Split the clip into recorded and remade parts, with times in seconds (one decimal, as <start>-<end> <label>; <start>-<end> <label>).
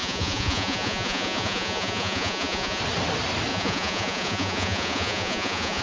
0.0-2.8 remade; 2.8-3.5 recorded; 3.5-5.8 remade